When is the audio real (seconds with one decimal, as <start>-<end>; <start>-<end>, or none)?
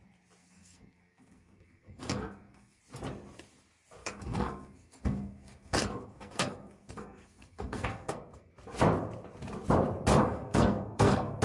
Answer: 0.0-0.4; 2.8-4.0; 8.5-10.2